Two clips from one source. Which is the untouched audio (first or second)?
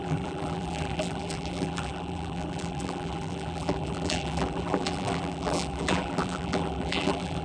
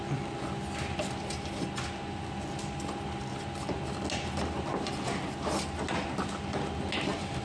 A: second